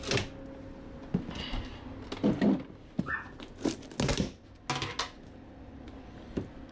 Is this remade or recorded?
recorded